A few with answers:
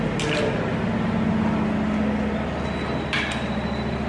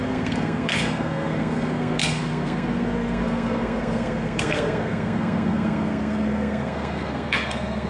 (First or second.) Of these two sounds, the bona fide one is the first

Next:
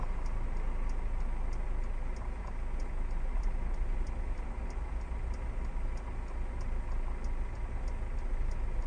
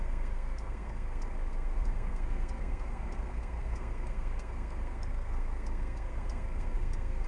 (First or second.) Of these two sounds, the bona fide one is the first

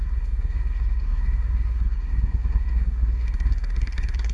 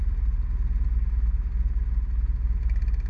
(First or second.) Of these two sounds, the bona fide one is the second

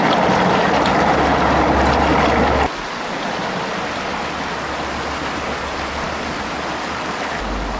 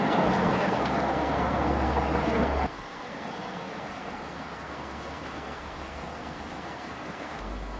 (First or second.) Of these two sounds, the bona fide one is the first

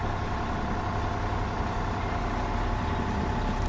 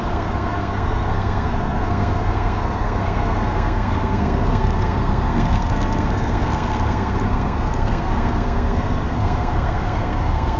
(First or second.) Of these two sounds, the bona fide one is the first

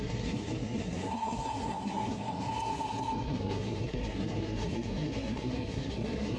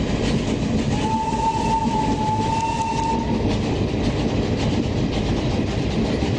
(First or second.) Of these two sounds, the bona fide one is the second